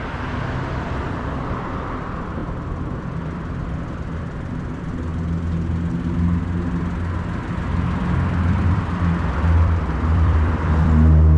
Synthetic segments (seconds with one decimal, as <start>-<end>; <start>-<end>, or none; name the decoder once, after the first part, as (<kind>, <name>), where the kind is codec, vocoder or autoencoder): 0.0-2.4 (vocoder, BigVGAN v2); 3.0-5.1; 8.6-11.4